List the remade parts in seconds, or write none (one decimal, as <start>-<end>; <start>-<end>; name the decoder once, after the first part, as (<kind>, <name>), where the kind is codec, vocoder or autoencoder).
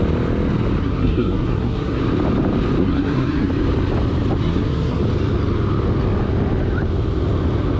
0.8-2.0 (codec, SNAC); 2.8-3.5; 4.4-5.0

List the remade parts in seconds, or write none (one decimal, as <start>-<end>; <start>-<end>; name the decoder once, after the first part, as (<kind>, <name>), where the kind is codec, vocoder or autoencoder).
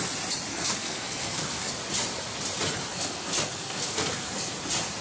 0.5-1.7 (codec, SNAC); 2.9-4.5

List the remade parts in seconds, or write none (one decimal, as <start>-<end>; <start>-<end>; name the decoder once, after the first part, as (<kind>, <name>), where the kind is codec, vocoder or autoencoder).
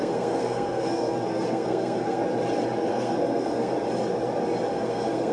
0.0-2.2 (codec, SNAC); 2.9-3.7; 4.7-5.3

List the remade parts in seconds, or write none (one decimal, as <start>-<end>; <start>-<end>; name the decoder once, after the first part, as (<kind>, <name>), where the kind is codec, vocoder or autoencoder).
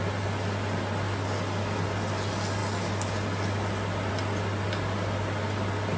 none